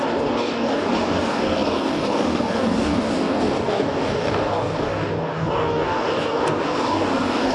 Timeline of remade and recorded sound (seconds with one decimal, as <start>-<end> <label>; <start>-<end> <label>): 0.0-7.5 remade